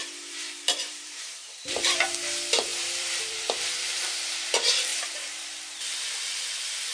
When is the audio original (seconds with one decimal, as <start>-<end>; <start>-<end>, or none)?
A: 2.0-2.7; 4.4-4.9; 5.8-6.9

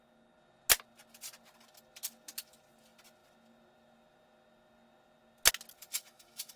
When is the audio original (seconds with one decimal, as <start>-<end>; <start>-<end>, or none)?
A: 0.0-5.9

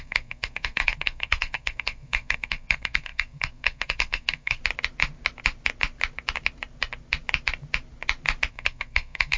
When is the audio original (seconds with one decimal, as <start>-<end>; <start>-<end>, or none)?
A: 4.6-8.5

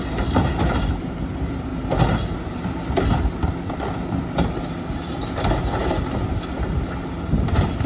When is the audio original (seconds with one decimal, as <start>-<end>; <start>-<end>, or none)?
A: 0.0-7.9